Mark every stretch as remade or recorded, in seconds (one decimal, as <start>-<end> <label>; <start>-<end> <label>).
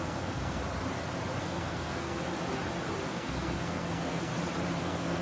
0.0-0.6 remade; 0.6-1.4 recorded; 1.4-2.3 remade; 2.3-3.1 recorded; 3.1-4.3 remade; 4.3-4.8 recorded; 4.8-5.2 remade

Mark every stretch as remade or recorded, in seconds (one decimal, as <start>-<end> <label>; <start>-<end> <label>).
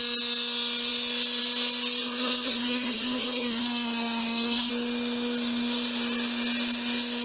0.0-2.0 recorded; 2.0-4.7 remade; 4.7-7.2 recorded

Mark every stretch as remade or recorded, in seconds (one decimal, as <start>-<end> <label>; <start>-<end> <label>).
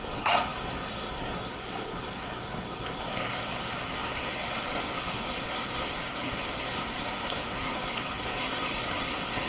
0.0-9.5 remade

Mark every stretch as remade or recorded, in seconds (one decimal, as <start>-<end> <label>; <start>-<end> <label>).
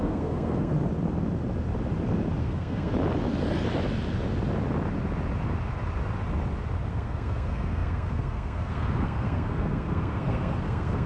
0.0-0.7 remade; 0.7-2.4 recorded; 2.4-2.9 remade; 2.9-6.9 recorded; 6.9-11.1 remade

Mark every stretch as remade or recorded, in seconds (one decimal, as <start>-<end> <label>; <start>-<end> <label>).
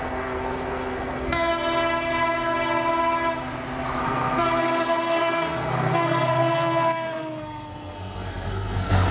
0.0-1.5 remade; 1.5-4.0 recorded; 4.0-9.1 remade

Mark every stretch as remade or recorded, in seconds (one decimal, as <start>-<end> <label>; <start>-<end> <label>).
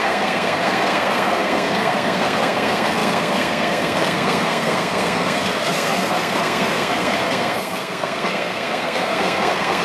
0.0-9.8 remade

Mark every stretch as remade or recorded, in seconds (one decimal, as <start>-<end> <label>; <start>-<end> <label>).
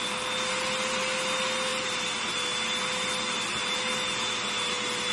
0.0-5.1 recorded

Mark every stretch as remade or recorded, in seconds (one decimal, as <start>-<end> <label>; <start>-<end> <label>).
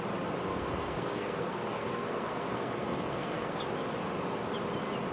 0.0-0.5 recorded; 0.5-3.6 remade; 3.6-5.1 recorded